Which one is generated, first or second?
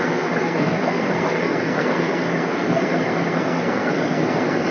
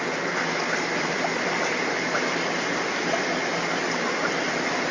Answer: first